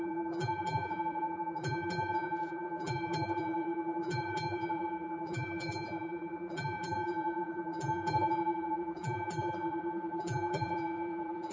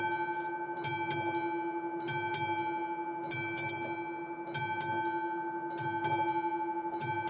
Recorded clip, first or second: second